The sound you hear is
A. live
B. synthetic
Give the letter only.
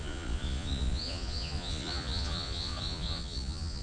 B